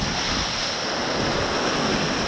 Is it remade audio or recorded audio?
recorded